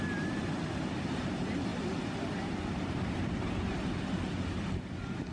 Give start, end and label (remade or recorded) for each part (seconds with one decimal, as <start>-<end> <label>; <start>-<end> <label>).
0.0-5.3 recorded